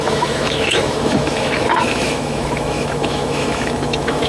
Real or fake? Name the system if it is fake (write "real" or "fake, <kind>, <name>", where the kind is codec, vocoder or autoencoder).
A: fake, autoencoder, DAC-VAE